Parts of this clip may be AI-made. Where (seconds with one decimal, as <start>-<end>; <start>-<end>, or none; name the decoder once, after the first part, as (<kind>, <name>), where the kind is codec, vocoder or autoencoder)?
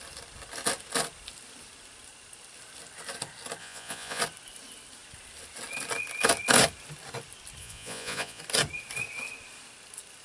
3.6-4.2 (vocoder, Vocos); 7.6-8.4